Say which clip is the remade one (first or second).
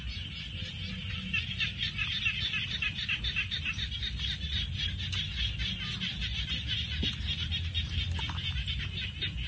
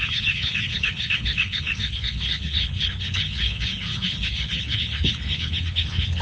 second